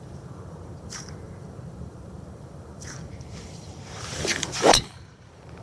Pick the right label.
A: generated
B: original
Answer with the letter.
A